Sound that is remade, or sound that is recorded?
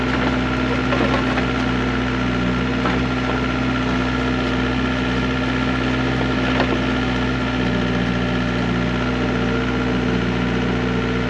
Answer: recorded